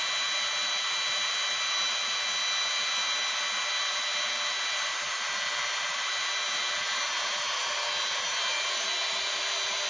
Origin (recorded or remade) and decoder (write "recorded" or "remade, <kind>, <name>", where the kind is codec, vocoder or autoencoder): recorded